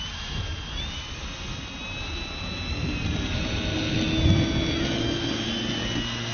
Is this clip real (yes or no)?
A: yes